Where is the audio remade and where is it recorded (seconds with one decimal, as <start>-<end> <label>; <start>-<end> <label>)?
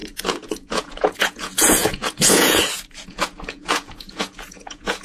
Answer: 0.0-5.0 remade